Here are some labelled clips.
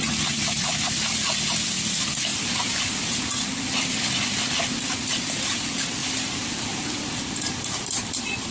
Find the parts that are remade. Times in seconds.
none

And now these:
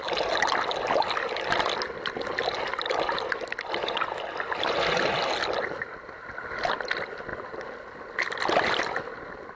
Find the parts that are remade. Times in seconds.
none

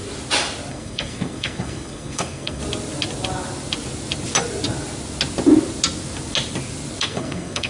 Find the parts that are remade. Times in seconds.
0.7-2.6 (codec, SNAC); 7.0-7.7

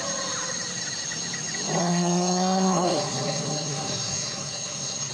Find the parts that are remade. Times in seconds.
1.8-5.1 (codec, SNAC)

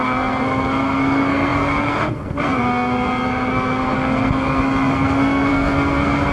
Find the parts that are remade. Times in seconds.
0.0-6.3 (codec, SNAC)

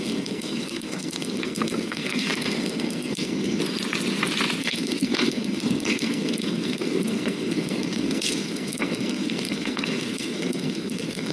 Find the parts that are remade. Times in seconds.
0.0-3.6 (codec, SNAC); 4.6-11.3